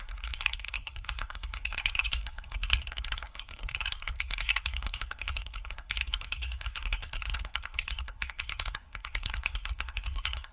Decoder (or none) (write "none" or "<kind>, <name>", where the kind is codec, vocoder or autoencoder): codec, SNAC